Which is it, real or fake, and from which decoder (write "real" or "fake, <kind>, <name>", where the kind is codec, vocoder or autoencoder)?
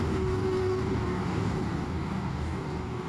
fake, codec, DAC